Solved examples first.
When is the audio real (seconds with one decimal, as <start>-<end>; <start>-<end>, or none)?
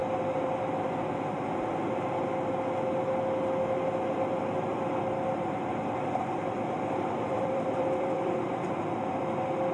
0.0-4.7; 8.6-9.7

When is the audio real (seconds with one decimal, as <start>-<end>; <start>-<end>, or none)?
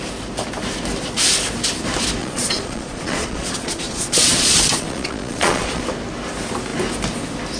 0.0-2.2; 5.8-7.6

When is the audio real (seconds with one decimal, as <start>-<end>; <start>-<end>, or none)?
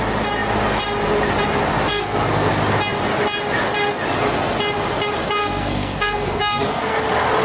0.0-1.9; 2.5-5.4; 7.0-7.4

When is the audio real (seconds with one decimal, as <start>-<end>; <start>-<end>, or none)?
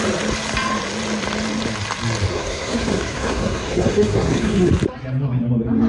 0.0-2.3; 4.7-5.9